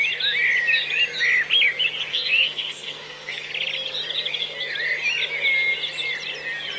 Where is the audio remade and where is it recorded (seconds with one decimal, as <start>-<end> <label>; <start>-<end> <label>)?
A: 0.0-2.1 recorded; 2.1-3.5 remade; 3.5-6.8 recorded